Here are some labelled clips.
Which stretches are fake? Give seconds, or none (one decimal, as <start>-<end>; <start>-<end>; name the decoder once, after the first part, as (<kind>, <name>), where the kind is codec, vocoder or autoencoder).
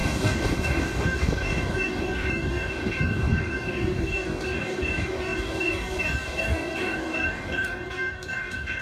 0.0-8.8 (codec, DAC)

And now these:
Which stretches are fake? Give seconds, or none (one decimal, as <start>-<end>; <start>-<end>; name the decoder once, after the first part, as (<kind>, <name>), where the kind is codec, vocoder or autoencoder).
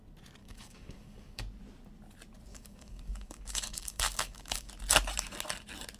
0.4-1.4 (codec, DAC); 2.5-4.7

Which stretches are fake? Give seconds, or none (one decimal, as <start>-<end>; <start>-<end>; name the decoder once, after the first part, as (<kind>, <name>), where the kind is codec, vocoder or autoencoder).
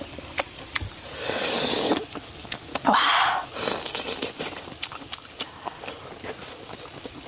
0.0-2.7 (codec, DAC)